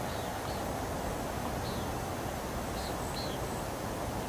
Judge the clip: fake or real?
real